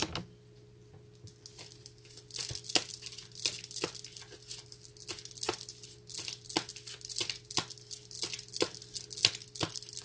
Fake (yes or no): no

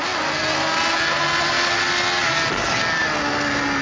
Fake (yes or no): no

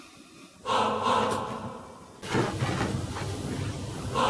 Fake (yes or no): no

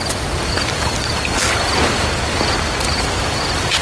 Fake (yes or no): no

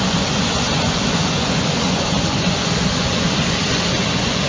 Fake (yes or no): yes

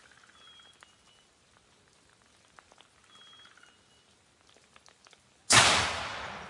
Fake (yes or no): no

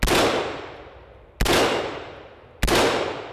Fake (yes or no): no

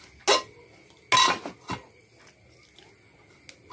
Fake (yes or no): no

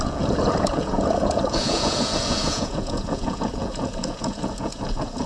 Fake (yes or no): yes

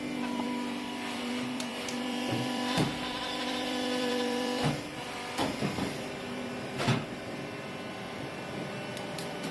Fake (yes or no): yes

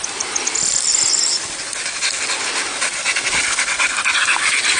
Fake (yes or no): no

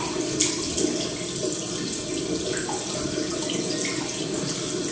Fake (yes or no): no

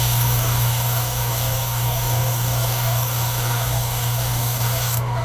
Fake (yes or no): yes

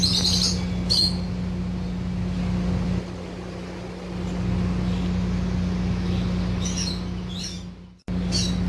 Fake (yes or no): no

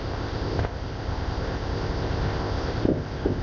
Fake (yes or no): yes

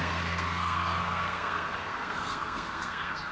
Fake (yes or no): yes